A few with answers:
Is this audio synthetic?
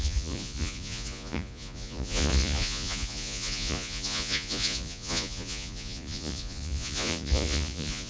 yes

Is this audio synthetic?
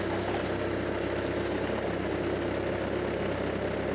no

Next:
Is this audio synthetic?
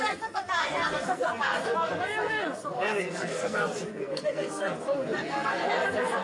yes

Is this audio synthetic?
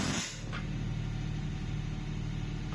no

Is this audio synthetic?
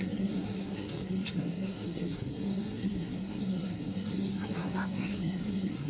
yes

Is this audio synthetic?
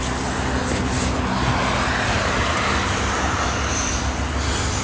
no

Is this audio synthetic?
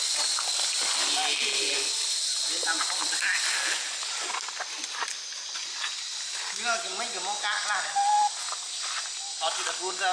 no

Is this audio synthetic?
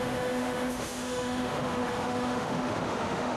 yes